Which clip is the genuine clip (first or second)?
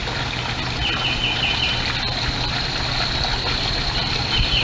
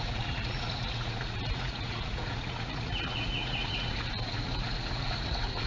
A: first